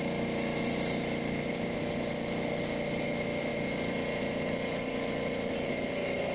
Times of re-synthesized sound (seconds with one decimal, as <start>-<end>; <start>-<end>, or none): none